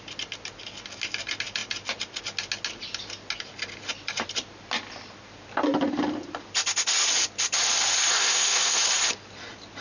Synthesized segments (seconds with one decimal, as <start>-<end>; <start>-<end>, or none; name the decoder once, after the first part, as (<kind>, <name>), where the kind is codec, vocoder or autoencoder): 8.1-8.8 (codec, SNAC)